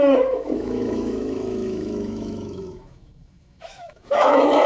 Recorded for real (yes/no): no